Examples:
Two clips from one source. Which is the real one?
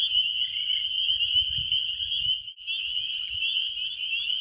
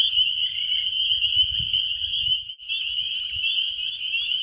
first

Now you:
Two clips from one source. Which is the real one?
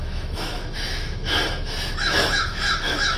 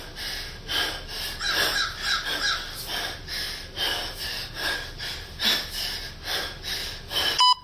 second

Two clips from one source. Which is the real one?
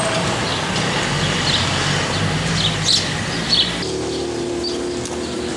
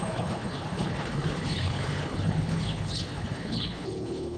first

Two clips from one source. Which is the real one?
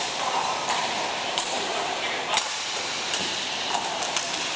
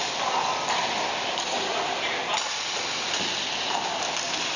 second